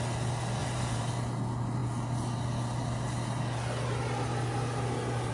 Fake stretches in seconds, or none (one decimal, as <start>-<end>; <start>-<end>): 0.6-1.1